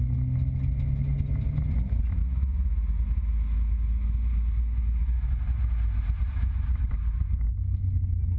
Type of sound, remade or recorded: recorded